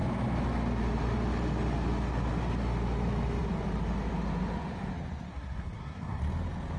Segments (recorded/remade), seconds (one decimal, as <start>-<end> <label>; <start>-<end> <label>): 0.0-5.3 recorded; 5.3-6.2 remade; 6.2-6.8 recorded